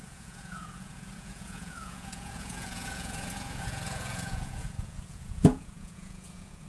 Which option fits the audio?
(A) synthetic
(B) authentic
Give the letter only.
A